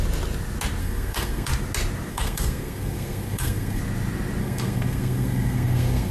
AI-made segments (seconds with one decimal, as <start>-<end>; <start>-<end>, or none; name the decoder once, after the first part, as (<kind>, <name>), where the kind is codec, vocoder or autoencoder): 0.8-1.5 (codec, SNAC); 2.1-3.8; 4.4-6.1